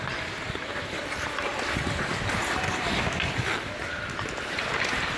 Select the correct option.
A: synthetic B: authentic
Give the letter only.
B